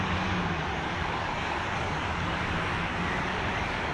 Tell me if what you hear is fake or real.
fake